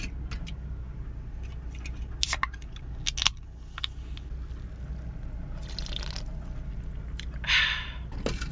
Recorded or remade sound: recorded